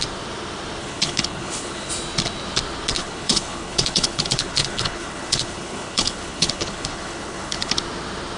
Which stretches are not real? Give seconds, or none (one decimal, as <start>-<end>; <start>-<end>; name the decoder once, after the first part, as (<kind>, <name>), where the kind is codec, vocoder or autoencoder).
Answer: 0.8-1.9 (codec, HILCodec); 3.0-7.7